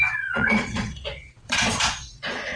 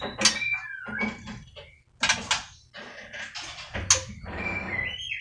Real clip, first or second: second